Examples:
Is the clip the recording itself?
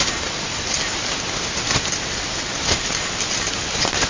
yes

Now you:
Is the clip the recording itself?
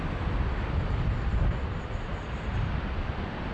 no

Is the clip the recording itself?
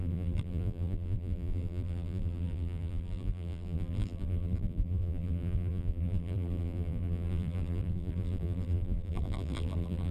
no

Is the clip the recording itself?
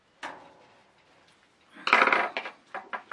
yes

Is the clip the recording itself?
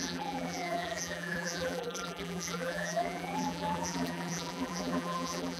no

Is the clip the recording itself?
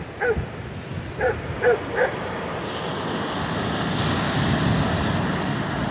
yes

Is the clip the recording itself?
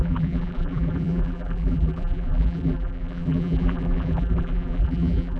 no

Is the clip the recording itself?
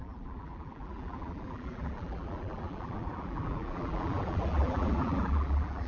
no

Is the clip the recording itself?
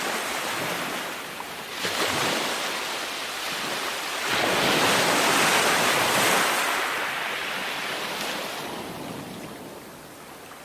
yes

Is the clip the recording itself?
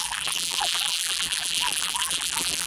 no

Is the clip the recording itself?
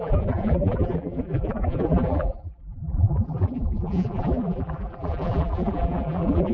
no